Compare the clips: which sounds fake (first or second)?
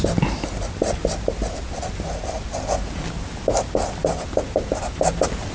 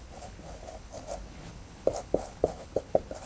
second